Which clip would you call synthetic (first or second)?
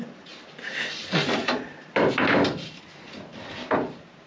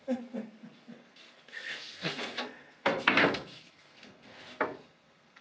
second